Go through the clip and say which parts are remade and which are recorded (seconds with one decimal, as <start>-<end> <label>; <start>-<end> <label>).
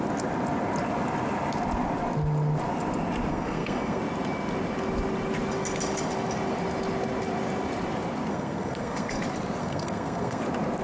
0.0-3.3 recorded; 3.3-4.0 remade; 4.0-8.3 recorded; 8.3-9.1 remade; 9.1-9.6 recorded; 9.6-10.4 remade; 10.4-10.8 recorded